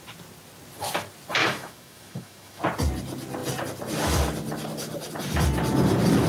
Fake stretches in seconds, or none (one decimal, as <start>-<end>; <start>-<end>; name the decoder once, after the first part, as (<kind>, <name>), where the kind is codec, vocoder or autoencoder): 1.4-2.6 (autoencoder, DAC-VAE)